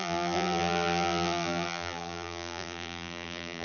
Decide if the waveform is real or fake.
fake